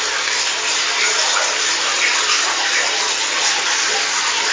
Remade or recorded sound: recorded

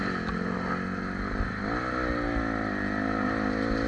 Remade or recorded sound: recorded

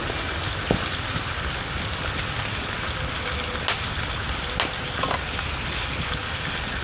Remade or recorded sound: recorded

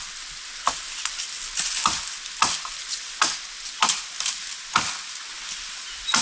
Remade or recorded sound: recorded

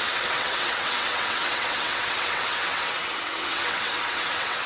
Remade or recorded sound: remade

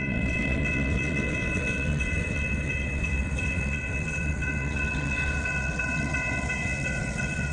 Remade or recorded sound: remade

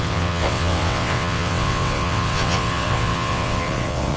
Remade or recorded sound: remade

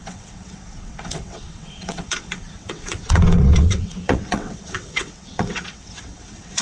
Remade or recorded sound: remade